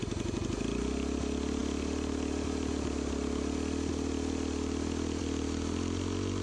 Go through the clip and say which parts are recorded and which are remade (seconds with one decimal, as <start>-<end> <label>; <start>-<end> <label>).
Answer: 0.0-6.4 recorded